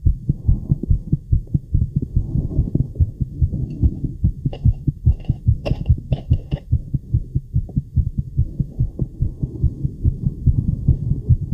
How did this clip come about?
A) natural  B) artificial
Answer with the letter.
B